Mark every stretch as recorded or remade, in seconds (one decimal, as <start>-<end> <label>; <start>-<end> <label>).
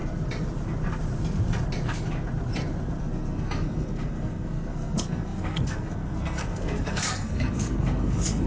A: 0.0-3.0 recorded; 3.0-8.5 remade